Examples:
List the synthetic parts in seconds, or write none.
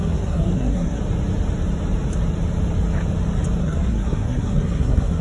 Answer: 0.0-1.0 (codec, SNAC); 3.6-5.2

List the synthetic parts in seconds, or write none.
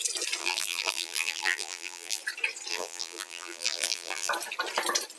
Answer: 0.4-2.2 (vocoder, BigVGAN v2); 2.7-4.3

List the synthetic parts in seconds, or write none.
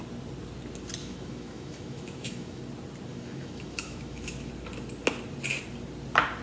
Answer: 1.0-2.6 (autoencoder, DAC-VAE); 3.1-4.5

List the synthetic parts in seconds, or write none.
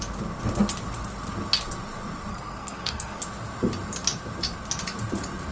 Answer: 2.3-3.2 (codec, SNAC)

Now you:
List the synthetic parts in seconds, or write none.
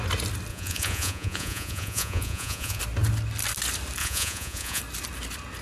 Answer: 0.5-2.8 (vocoder, Vocos); 4.0-4.8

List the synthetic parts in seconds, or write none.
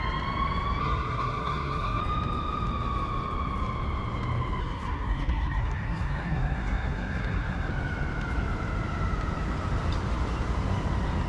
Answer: 0.8-2.0 (codec, SNAC); 4.6-7.7